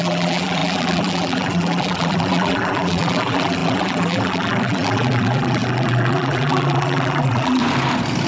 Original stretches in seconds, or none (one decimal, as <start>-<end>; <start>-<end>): 7.6-8.3